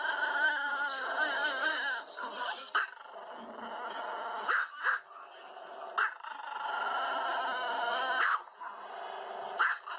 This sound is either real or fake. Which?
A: real